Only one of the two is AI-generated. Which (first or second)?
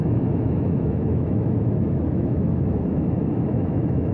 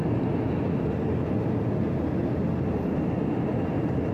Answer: first